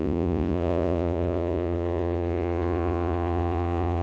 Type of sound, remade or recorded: remade